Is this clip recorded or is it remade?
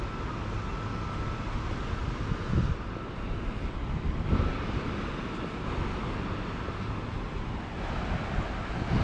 recorded